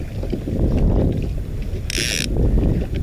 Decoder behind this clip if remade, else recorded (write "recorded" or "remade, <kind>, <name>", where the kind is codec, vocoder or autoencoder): recorded